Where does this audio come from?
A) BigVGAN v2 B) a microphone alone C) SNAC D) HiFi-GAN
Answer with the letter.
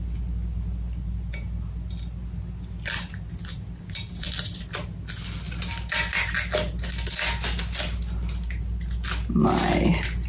B